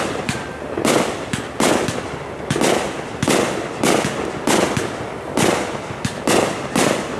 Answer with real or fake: real